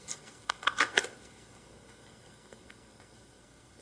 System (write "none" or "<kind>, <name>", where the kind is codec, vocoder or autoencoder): codec, SNAC